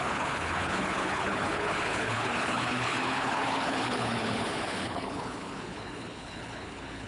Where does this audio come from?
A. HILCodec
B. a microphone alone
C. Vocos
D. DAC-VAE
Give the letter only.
A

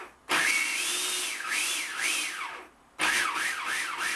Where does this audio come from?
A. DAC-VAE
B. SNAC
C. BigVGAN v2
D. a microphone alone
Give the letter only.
D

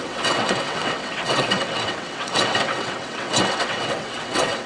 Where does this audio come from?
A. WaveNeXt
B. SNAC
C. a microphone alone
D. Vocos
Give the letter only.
A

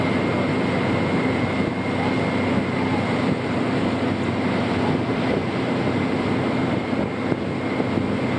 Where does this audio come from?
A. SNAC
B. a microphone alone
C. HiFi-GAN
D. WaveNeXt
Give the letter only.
B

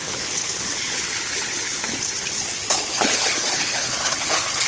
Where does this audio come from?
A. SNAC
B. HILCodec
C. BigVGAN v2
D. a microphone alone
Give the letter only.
B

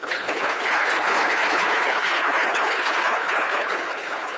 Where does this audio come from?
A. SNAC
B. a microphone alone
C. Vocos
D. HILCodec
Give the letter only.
D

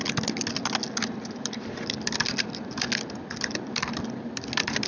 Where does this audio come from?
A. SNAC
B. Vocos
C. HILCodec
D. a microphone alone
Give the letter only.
D